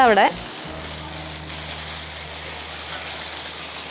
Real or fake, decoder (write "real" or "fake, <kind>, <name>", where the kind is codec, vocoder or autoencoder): real